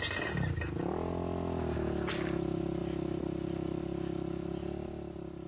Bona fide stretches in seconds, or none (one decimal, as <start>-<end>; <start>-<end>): 0.0-5.5